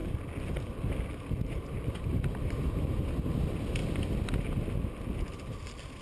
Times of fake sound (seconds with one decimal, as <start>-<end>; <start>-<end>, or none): none